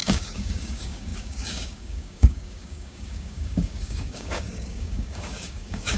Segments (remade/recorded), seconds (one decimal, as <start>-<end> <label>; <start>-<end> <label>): 0.0-6.0 remade